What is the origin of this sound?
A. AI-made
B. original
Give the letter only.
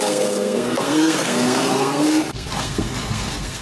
A